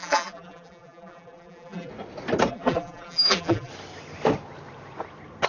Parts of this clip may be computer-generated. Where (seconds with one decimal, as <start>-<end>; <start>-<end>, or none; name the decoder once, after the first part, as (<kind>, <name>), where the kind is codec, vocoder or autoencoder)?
0.0-1.9 (vocoder, BigVGAN v2); 2.5-3.7